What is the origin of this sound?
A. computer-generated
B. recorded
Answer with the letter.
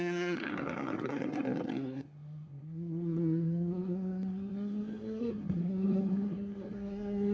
A